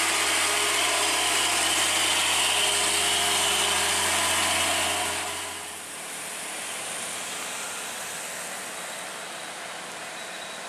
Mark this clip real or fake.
real